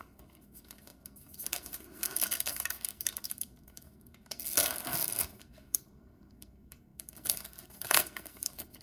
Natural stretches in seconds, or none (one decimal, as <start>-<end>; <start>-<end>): none